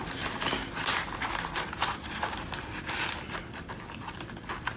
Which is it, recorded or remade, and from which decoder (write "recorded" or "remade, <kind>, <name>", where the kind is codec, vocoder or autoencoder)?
recorded